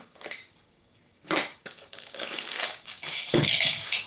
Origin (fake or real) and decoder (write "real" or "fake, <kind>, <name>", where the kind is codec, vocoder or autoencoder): fake, codec, DAC